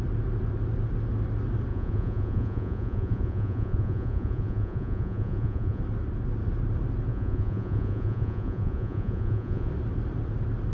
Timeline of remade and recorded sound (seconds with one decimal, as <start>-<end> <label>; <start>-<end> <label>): 0.0-1.7 recorded; 1.7-5.8 remade; 5.8-7.1 recorded; 7.1-9.7 remade; 9.7-10.7 recorded